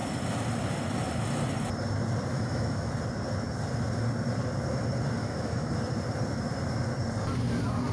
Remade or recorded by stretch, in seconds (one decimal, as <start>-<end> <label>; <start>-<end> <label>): 0.0-2.3 recorded; 2.3-2.9 remade; 2.9-5.2 recorded; 5.2-5.7 remade; 5.7-7.9 recorded